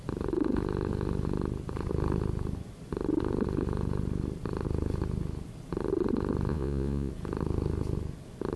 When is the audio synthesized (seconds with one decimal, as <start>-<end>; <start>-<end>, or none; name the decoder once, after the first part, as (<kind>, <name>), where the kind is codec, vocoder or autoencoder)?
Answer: 6.5-7.1 (vocoder, Vocos)

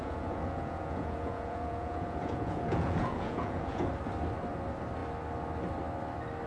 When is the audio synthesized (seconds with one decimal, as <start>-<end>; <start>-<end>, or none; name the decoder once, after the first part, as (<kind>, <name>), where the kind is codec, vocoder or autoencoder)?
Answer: 0.0-3.9 (vocoder, Vocos)

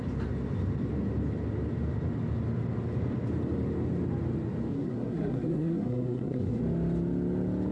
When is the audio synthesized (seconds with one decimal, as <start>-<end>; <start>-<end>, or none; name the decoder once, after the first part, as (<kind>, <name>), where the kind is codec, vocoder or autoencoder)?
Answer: 4.7-6.6 (codec, SNAC)

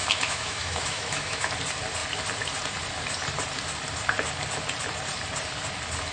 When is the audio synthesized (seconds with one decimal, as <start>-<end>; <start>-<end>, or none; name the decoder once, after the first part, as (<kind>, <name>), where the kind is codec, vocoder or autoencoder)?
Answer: 0.0-1.5 (autoencoder, DAC-VAE)